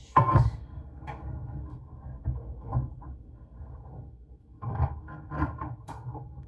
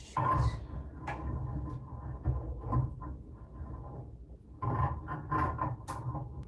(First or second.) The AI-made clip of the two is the first